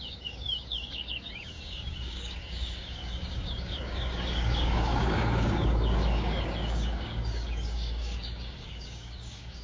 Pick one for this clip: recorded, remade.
remade